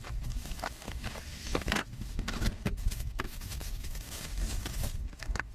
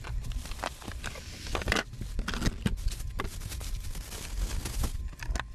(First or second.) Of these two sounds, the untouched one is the second